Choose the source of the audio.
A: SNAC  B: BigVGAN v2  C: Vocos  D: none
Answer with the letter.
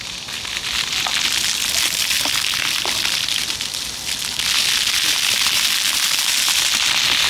D